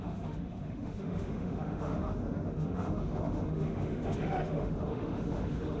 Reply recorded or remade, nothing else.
remade